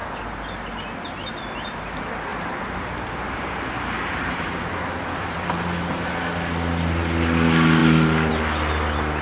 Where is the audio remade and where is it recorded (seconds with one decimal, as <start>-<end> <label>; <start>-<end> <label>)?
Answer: 0.0-2.3 recorded; 2.3-6.1 remade; 6.1-9.2 recorded